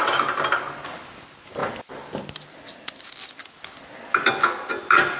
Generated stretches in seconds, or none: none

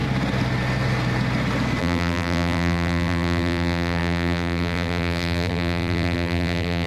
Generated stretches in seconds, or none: 1.8-6.9 (vocoder, BigVGAN v2)

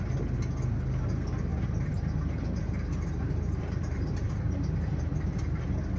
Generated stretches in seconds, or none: 1.5-5.1 (vocoder, BigVGAN v2)

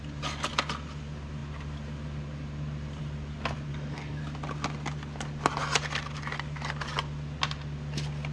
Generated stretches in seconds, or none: 3.7-4.2 (codec, DAC)